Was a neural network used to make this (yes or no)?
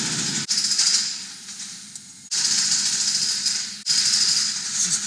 no